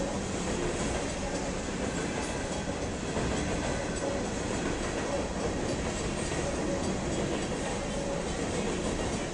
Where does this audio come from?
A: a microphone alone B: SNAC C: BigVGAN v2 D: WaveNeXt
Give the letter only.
A